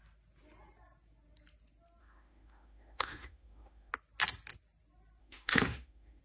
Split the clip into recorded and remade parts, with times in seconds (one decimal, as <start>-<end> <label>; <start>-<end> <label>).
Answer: 0.0-2.0 recorded; 2.0-3.9 remade; 3.9-5.2 recorded; 5.2-6.2 remade

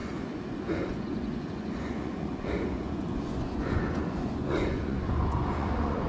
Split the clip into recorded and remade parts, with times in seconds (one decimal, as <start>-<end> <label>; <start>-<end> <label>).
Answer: 0.0-6.1 remade

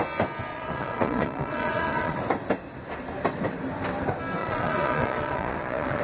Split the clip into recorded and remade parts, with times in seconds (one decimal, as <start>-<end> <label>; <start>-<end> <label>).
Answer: 0.0-0.5 recorded; 0.5-2.2 remade; 2.2-4.4 recorded; 4.4-6.0 remade

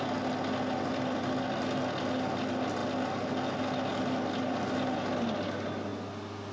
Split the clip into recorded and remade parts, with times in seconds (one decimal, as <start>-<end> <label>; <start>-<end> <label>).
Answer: 0.0-6.5 recorded

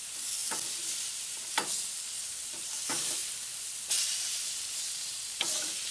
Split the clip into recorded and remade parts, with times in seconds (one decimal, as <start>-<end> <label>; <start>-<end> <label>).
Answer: 0.0-5.9 recorded

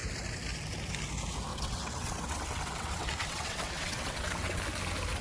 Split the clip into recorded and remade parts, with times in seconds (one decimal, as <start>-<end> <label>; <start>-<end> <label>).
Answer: 0.0-1.5 recorded; 1.5-4.6 remade; 4.6-5.2 recorded